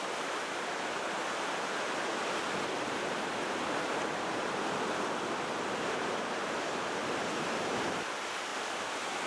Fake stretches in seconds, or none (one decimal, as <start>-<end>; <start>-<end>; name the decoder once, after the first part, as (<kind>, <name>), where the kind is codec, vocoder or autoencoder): none